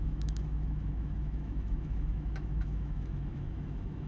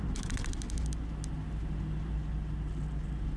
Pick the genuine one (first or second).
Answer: second